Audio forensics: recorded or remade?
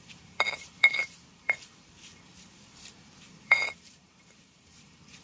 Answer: remade